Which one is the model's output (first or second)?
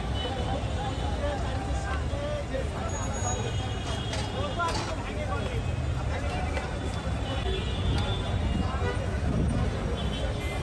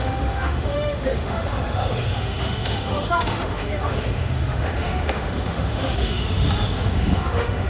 second